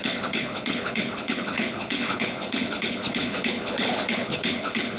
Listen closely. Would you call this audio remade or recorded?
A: remade